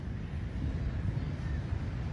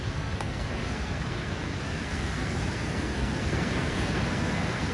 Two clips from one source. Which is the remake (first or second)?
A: second